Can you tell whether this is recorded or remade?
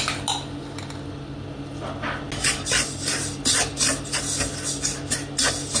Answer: recorded